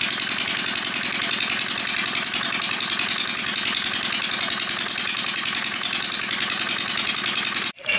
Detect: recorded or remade recorded